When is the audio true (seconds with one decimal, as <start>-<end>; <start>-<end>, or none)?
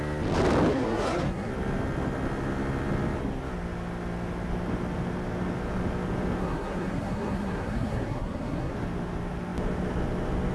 0.0-0.7; 1.5-6.4; 8.7-10.5